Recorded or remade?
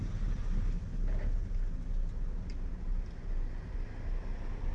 recorded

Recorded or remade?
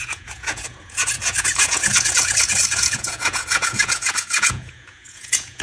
remade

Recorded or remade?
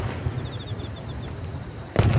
recorded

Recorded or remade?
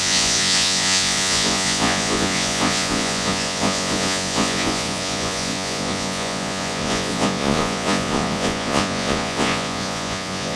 remade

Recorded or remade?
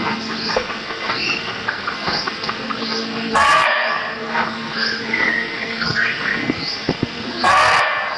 remade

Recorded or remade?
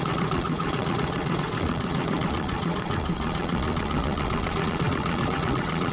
remade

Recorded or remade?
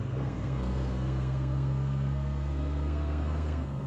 remade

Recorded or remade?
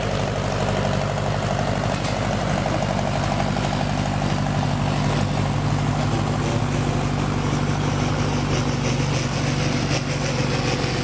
recorded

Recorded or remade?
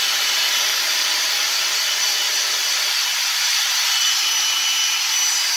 recorded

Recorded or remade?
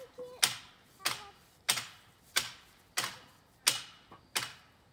recorded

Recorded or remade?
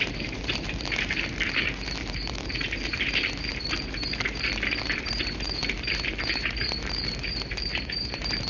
remade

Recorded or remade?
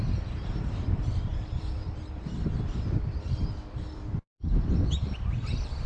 remade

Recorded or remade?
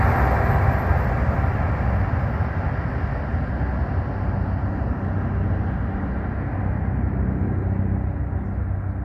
recorded